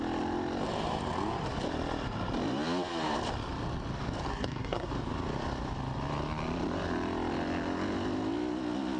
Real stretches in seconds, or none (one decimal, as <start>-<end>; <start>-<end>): 0.0-4.3; 4.9-9.0